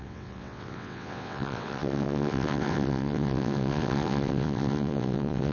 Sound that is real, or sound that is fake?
fake